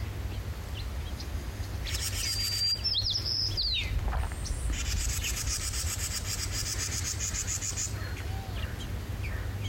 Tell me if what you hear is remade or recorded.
recorded